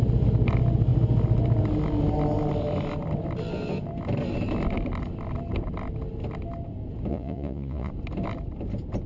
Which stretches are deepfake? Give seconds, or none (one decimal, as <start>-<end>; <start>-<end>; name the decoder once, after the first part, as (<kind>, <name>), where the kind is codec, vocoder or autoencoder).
7.1-7.9 (vocoder, Vocos)